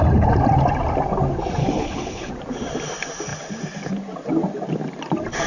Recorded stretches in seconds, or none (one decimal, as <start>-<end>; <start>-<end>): 0.0-1.6; 2.3-5.5